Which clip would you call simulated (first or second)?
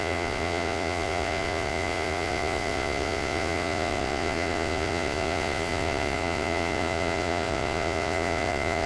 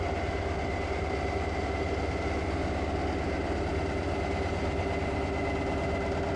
first